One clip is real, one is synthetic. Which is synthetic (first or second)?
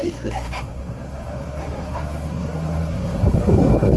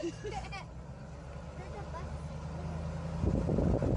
first